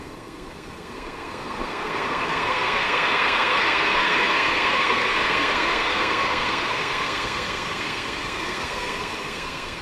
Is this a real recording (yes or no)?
no